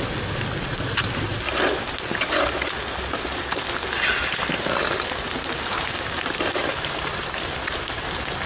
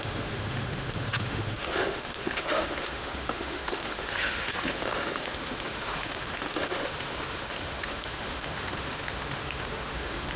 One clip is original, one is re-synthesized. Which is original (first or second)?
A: first